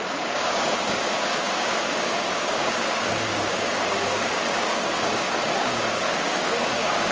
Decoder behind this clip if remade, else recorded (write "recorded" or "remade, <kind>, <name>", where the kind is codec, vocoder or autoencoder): remade, codec, DAC